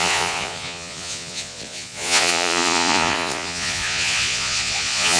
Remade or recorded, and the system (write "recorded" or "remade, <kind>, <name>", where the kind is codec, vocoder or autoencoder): remade, vocoder, Vocos